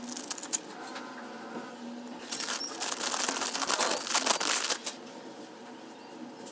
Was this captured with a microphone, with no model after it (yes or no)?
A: yes